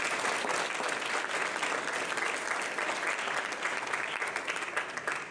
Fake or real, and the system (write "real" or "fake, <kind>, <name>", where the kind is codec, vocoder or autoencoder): real